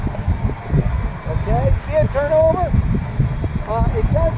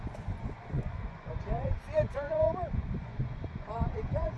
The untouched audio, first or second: first